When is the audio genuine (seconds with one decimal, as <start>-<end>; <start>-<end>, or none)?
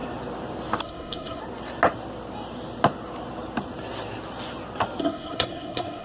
0.0-0.8; 1.4-5.0